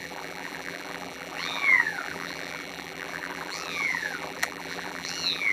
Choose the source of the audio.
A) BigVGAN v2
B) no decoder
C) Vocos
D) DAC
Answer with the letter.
A